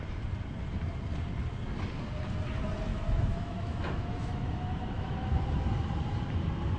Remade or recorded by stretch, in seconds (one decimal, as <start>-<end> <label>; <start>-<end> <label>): 0.0-2.9 recorded; 2.9-5.4 remade; 5.4-6.8 recorded